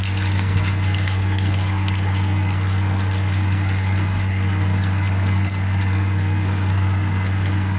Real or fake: fake